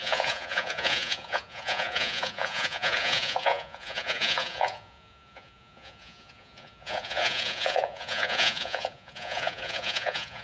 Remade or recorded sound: remade